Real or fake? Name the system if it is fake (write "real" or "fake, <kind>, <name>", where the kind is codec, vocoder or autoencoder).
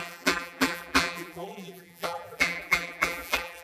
fake, vocoder, BigVGAN v2